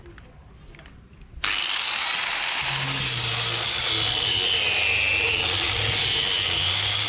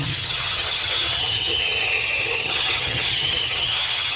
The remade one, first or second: second